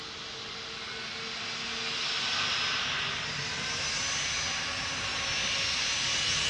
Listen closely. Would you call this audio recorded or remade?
recorded